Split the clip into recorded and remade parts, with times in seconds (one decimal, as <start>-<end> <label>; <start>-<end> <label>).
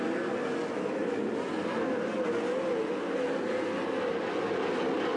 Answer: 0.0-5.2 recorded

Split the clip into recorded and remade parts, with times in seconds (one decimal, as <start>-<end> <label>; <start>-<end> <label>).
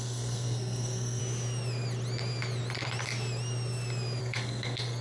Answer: 0.0-1.2 remade; 1.2-4.2 recorded; 4.2-5.0 remade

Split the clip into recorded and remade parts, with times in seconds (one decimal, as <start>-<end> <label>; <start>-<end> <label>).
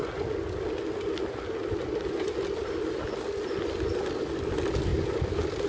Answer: 0.0-5.7 recorded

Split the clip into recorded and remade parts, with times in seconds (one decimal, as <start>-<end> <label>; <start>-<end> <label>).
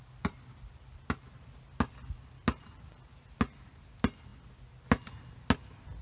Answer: 0.0-6.0 recorded